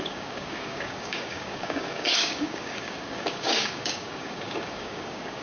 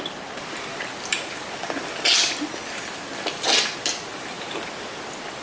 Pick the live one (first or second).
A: second